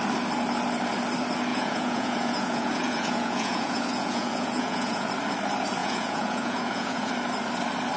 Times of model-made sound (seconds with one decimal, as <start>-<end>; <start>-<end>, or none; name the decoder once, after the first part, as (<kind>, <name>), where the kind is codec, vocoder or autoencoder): 1.5-5.1 (vocoder, Vocos); 5.8-7.1